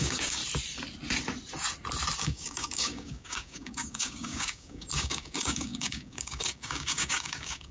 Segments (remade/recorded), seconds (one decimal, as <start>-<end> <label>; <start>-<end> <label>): 0.0-0.4 remade; 0.4-2.2 recorded; 2.2-7.7 remade